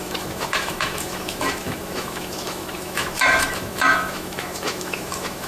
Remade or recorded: remade